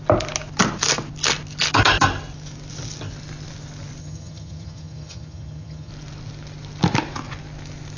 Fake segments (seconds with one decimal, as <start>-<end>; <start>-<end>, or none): 4.0-5.9